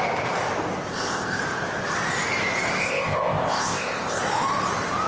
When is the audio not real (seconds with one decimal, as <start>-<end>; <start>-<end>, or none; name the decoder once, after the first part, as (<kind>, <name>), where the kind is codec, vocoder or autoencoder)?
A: 0.9-1.4 (codec, ZipCodec); 2.8-4.2